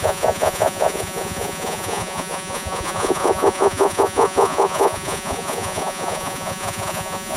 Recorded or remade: remade